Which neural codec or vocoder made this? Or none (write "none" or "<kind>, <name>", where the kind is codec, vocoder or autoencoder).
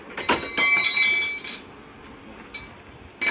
none